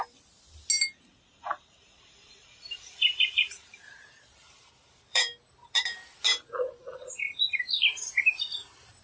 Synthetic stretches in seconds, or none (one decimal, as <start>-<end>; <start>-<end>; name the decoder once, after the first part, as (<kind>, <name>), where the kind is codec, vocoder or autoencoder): 1.3-5.2 (vocoder, BigVGAN v2); 6.8-7.6